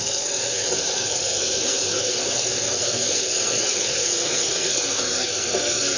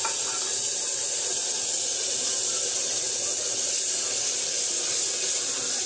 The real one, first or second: second